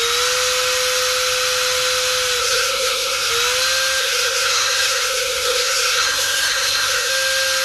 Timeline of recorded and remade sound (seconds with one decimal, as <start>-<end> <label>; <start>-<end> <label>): 0.0-2.4 recorded; 2.4-3.3 remade; 3.3-4.0 recorded; 4.0-7.1 remade; 7.1-7.6 recorded